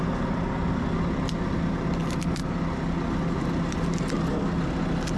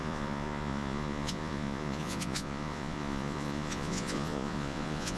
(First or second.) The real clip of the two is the first